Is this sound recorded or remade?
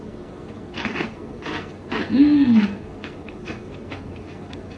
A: remade